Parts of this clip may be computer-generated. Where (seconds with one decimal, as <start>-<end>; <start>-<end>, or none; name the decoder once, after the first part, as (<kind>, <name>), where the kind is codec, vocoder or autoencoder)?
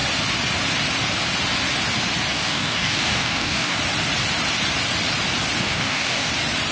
2.3-3.8 (codec, DAC); 5.6-6.3